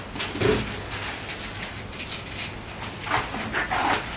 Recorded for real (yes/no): yes